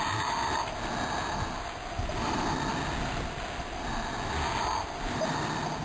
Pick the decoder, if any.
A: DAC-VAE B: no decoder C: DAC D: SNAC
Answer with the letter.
B